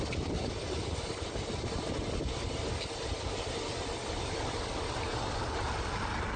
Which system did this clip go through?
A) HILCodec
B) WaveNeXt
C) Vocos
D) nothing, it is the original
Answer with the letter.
D